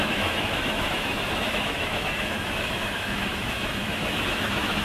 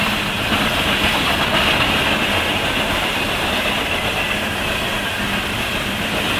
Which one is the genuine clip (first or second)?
second